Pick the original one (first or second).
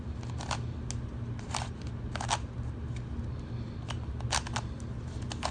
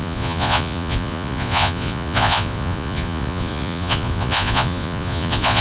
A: first